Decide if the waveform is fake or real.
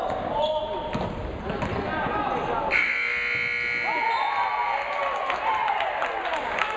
real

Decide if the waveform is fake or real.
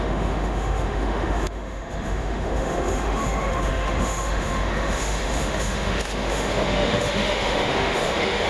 fake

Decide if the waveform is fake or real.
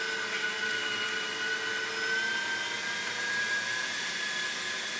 real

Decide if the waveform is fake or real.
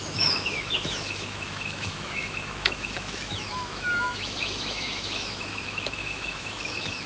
fake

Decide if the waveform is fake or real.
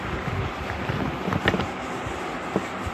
real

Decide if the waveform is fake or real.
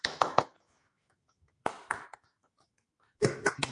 fake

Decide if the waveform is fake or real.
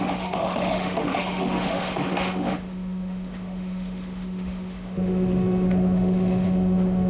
fake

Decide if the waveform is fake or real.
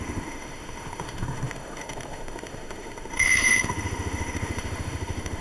fake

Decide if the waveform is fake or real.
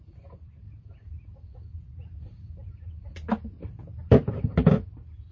real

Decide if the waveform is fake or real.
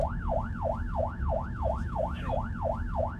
fake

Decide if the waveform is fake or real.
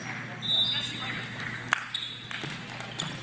real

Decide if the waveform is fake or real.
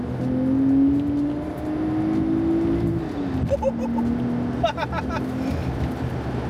real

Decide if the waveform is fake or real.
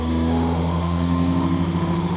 fake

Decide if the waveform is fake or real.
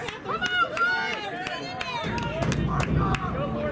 real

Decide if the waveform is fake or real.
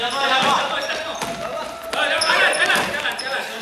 real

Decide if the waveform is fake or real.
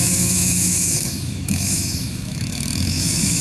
fake